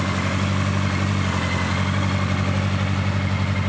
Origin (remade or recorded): recorded